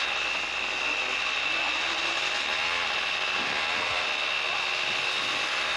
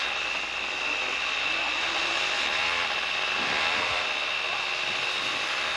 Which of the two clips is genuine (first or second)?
first